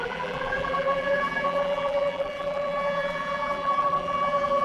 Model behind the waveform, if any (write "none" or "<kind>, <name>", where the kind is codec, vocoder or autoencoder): vocoder, BigVGAN v2